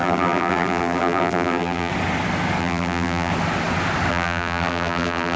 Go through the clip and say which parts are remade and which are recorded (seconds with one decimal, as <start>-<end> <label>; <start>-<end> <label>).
0.0-1.9 remade; 1.9-2.6 recorded; 2.6-3.3 remade; 3.3-4.1 recorded; 4.1-5.4 remade